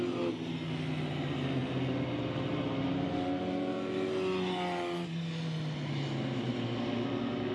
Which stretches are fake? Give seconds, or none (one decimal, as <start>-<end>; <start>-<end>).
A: none